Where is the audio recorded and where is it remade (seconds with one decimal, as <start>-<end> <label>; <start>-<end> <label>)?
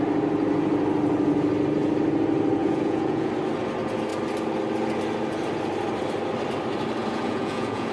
0.0-2.6 recorded; 2.6-3.3 remade; 3.3-7.0 recorded; 7.0-7.9 remade